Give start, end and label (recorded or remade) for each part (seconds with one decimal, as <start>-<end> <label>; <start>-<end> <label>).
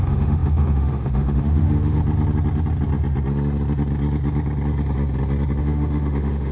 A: 0.0-2.0 remade; 2.0-5.6 recorded; 5.6-6.5 remade